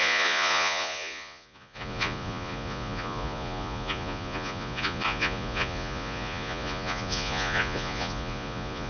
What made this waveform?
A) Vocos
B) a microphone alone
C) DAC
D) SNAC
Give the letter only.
A